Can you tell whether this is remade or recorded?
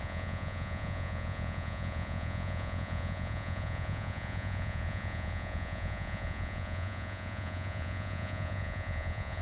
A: remade